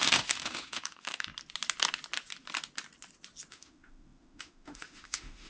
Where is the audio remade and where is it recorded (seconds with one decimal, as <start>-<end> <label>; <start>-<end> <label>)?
0.0-1.3 remade; 1.3-3.5 recorded; 3.5-5.5 remade